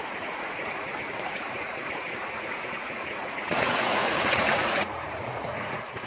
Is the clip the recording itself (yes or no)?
no